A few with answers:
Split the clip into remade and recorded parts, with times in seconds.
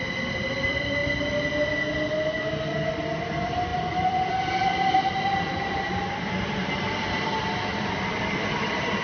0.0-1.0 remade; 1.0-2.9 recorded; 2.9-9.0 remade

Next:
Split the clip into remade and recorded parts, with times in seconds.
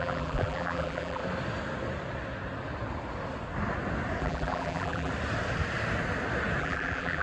0.0-1.2 remade; 1.2-4.2 recorded; 4.2-5.1 remade; 5.1-6.6 recorded; 6.6-7.2 remade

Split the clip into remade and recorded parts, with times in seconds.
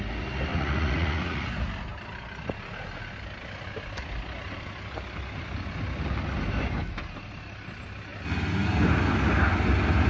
0.0-0.5 recorded; 0.5-1.5 remade; 1.5-10.1 recorded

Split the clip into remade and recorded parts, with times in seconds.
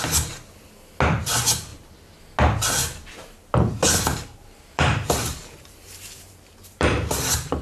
0.0-4.1 recorded; 4.1-7.6 remade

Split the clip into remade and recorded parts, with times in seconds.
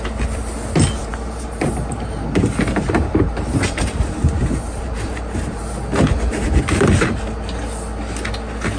0.0-1.1 recorded; 1.1-5.6 remade; 5.6-8.8 recorded